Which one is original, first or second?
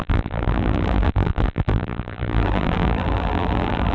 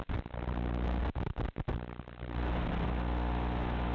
second